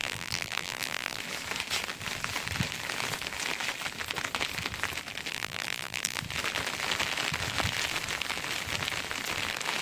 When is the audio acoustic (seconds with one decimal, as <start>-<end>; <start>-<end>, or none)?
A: 1.2-5.3; 6.2-9.8